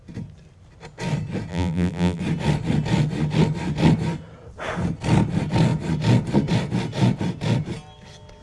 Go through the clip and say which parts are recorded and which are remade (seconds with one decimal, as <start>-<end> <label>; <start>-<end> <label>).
0.0-1.5 recorded; 1.5-2.2 remade; 2.2-8.4 recorded